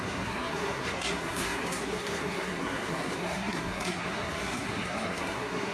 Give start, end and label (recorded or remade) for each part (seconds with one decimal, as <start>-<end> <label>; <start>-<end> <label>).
0.0-5.7 remade